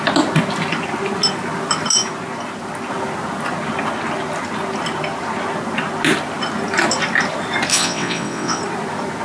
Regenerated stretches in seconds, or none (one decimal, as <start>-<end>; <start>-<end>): 7.7-8.6